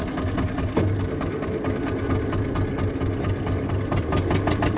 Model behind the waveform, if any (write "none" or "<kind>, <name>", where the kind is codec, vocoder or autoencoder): none